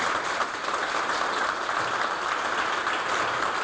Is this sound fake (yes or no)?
no